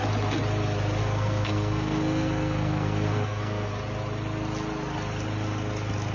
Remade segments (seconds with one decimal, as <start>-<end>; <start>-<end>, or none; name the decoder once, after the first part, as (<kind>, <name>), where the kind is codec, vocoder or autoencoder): 1.0-3.7 (codec, SNAC)